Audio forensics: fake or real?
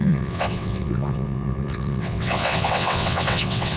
fake